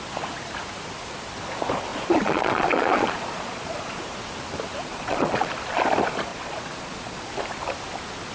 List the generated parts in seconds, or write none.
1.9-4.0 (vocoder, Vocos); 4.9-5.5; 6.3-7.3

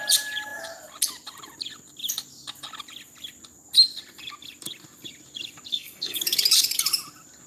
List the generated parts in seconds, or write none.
5.7-6.2 (codec, SNAC)

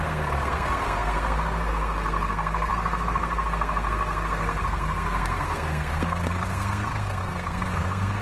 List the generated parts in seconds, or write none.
0.0-8.2 (codec, SNAC)

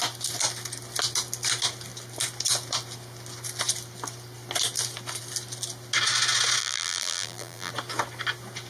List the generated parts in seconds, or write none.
6.6-7.7 (vocoder, BigVGAN v2)

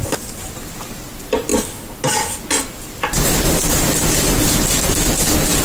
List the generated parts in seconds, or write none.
none